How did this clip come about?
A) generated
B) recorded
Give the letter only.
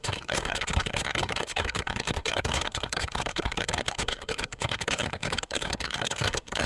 A